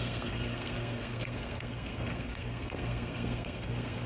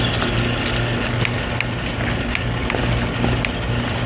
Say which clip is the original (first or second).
second